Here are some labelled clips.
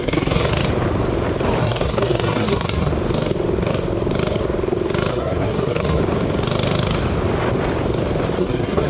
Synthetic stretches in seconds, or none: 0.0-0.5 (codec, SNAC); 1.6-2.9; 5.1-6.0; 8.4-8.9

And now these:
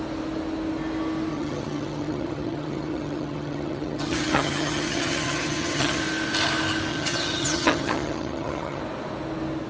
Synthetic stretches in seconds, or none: 1.3-6.0 (vocoder, HiFi-GAN); 6.9-8.8

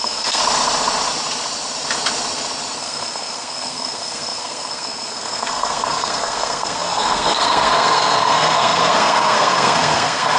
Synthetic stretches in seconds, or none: 0.0-0.4 (codec, SNAC); 2.8-10.4

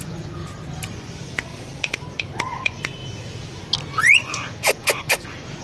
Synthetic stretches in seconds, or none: 0.0-0.4 (vocoder, Vocos); 0.9-1.5; 2.5-3.0; 4.0-5.6

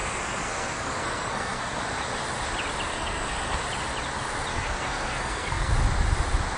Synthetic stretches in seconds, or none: 0.0-1.8 (codec, SNAC); 2.9-3.6; 4.5-5.7

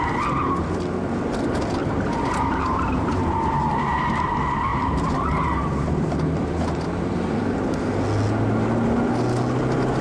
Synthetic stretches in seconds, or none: 1.8-4.3 (vocoder, BigVGAN v2); 4.7-7.7

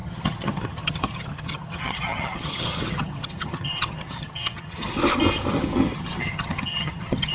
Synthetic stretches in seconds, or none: 0.0-5.0 (vocoder, HiFi-GAN); 5.5-7.3